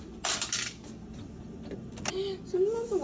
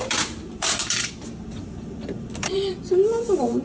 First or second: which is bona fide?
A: first